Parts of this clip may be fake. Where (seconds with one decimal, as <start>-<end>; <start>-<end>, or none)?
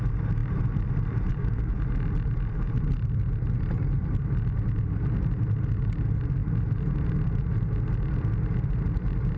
1.3-1.8